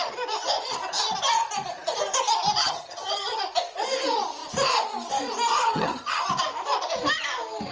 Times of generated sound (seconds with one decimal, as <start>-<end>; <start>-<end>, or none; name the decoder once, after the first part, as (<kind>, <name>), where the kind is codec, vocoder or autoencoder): 2.6-3.4 (vocoder, HiFi-GAN); 5.5-6.3

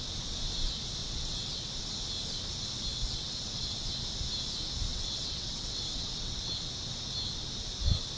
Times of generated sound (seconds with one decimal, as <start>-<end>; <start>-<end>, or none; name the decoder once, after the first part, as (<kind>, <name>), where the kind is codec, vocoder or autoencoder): 1.0-1.7 (vocoder, WaveNeXt); 2.9-3.9; 4.9-6.5

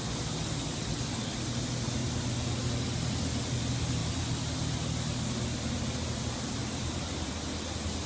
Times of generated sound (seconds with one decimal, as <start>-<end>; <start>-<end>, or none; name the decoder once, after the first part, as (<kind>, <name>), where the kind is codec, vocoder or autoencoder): 6.6-7.3 (vocoder, BigVGAN v2)